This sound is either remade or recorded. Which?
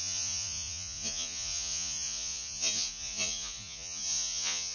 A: remade